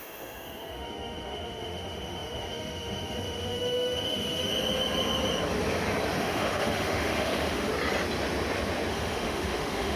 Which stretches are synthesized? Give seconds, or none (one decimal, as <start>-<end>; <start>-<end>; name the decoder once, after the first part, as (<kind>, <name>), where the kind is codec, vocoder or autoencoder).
0.0-4.5 (autoencoder, DAC-VAE); 6.2-7.7; 8.9-10.0